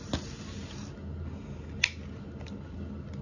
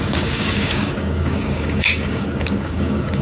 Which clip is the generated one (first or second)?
second